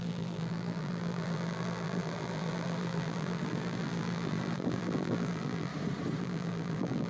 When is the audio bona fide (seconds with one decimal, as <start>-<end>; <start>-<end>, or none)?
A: 5.7-6.2